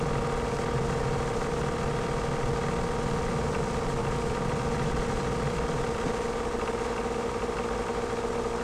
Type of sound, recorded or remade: recorded